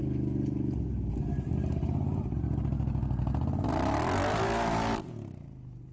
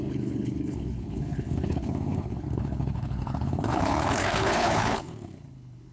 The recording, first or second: first